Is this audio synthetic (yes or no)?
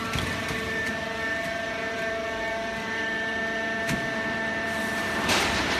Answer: yes